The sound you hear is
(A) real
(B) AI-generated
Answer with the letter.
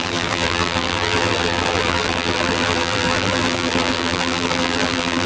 B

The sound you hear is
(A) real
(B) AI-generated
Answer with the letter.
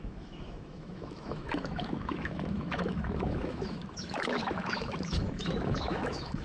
B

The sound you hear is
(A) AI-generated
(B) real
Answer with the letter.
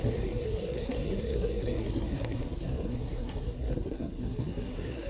A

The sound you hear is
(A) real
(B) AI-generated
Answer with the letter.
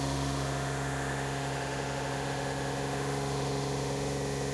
B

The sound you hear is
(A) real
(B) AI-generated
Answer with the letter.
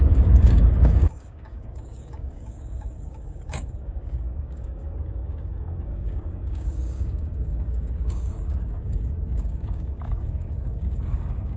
B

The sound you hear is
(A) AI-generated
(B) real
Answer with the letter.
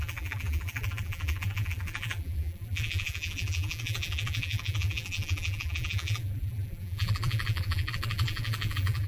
A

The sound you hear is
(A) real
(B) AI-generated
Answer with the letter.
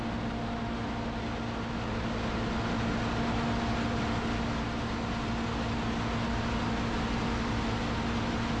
A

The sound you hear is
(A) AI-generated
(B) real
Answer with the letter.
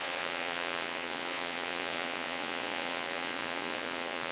A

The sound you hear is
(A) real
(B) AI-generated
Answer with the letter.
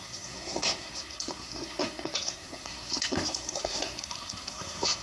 B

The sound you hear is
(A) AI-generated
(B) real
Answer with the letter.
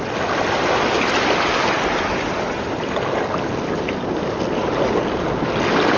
B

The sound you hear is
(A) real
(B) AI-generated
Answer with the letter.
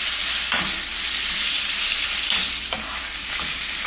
A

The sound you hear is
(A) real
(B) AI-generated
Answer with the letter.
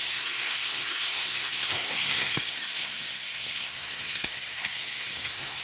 B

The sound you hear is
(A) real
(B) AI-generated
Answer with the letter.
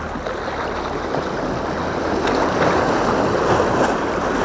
A